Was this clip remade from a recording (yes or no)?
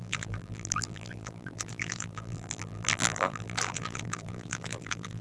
yes